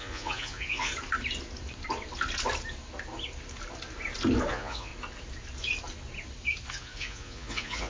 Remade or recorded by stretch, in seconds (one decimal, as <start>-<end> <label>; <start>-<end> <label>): 0.0-0.9 remade; 0.9-4.5 recorded; 4.5-4.9 remade; 4.9-6.7 recorded; 6.7-7.9 remade

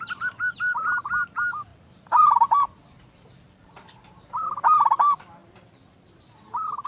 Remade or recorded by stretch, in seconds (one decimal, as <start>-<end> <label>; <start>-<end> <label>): 0.0-6.9 recorded

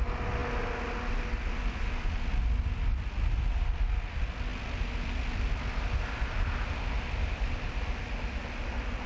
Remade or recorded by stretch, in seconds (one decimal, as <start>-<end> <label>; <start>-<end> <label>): 0.0-9.1 recorded

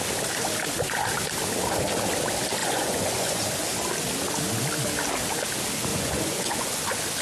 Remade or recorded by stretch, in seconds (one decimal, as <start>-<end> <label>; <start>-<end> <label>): 0.0-2.6 recorded; 2.6-3.4 remade; 3.4-5.9 recorded; 5.9-6.8 remade; 6.8-7.2 recorded

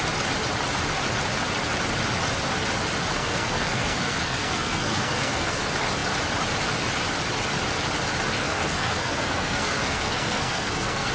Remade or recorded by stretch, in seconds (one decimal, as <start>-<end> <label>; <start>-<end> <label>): 0.0-3.1 recorded; 3.1-5.6 remade; 5.6-8.4 recorded; 8.4-11.1 remade

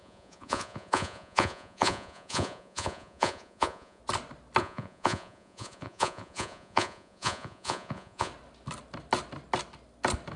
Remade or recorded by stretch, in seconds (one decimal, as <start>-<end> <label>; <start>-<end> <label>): 0.0-4.0 remade; 4.0-4.6 recorded; 4.6-8.3 remade; 8.3-10.4 recorded